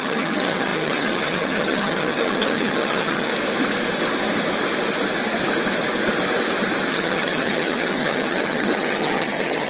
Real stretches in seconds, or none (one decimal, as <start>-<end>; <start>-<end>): 3.3-6.9